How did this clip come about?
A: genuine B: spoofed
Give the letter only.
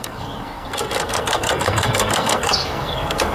B